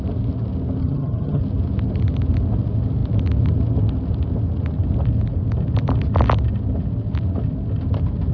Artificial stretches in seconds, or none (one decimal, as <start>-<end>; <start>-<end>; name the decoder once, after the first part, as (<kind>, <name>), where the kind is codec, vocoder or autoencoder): 0.8-1.4 (vocoder, HiFi-GAN)